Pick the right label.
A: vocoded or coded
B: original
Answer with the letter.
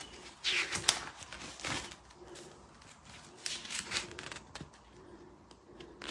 B